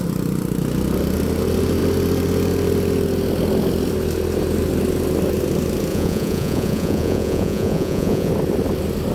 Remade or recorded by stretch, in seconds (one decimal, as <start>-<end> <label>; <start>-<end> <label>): 0.0-5.9 recorded; 5.9-8.3 remade; 8.3-9.1 recorded